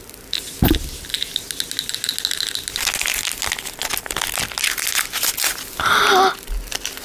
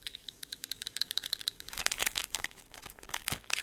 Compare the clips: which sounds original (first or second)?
first